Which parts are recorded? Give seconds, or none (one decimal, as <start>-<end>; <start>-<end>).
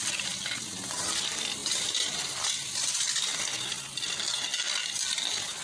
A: 0.0-1.6; 2.5-5.6